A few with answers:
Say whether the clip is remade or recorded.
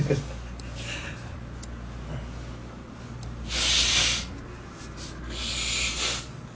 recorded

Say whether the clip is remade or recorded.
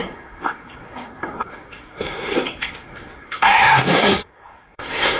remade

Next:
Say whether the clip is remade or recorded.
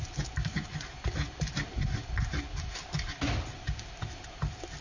recorded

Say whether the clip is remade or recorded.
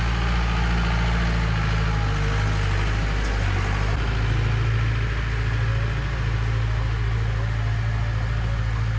recorded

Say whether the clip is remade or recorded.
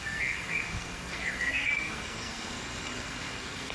remade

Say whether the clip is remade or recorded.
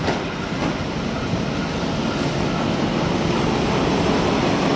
recorded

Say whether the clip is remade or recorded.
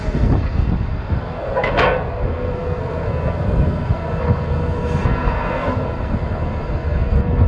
remade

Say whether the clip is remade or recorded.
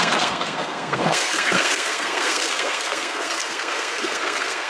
remade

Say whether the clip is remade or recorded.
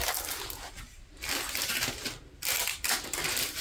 recorded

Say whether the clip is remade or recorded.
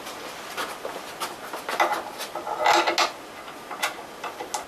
recorded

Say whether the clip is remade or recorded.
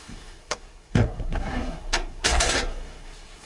remade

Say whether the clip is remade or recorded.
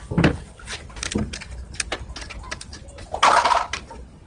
recorded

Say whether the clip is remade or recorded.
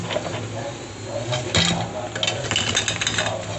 recorded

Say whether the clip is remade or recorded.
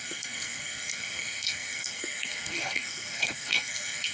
remade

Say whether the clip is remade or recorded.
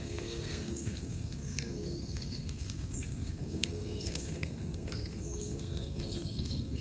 remade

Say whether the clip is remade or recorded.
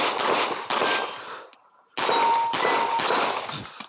recorded